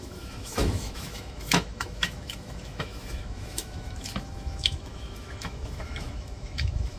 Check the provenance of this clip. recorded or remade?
remade